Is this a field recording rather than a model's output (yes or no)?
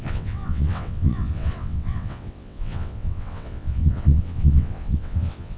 no